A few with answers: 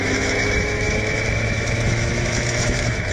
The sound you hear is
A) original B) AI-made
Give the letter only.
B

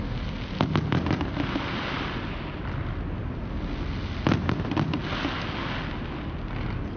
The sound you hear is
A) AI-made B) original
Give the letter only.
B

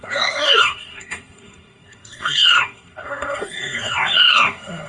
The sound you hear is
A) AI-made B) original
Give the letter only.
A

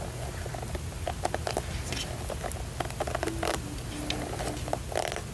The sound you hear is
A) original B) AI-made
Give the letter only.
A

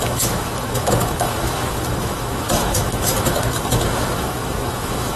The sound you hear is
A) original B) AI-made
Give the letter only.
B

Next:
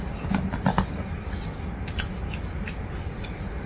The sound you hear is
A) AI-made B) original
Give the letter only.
B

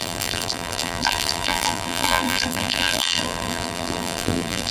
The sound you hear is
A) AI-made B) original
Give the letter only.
A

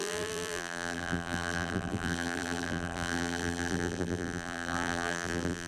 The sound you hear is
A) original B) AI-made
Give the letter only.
B